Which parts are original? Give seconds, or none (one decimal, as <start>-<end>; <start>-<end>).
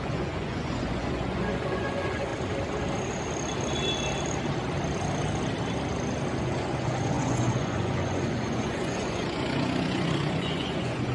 2.3-6.4